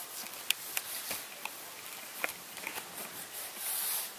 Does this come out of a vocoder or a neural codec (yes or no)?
no